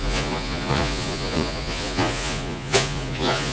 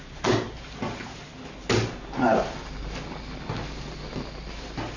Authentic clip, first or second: second